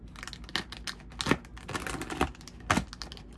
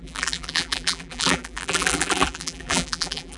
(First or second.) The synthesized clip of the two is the second